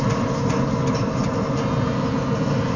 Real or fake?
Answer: real